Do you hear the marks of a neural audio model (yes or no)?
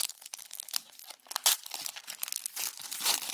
no